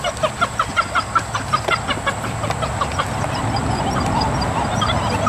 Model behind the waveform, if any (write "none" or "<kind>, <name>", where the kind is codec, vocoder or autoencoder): none